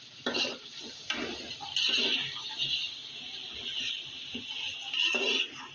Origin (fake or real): real